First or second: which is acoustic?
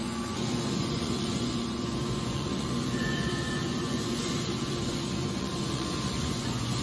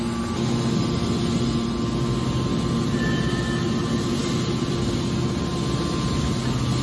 second